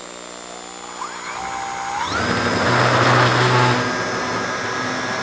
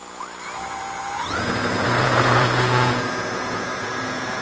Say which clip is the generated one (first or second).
second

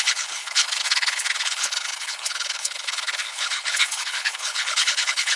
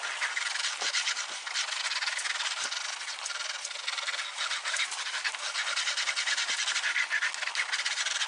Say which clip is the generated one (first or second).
first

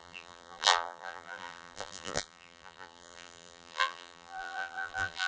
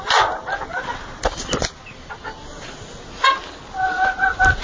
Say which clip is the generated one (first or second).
first